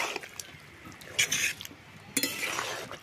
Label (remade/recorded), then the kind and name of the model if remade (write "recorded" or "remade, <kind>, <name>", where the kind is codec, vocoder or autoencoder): recorded